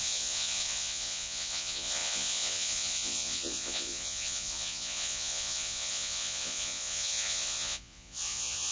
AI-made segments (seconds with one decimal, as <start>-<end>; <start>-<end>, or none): 0.0-8.7